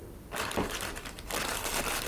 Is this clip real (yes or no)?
yes